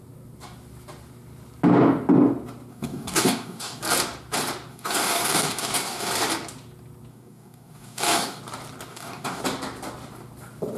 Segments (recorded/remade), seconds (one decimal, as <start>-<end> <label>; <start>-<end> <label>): 0.0-2.7 recorded; 2.7-3.8 remade; 3.8-4.7 recorded; 4.7-6.1 remade; 6.1-7.1 recorded; 7.1-8.4 remade; 8.4-8.9 recorded; 8.9-9.4 remade; 9.4-10.8 recorded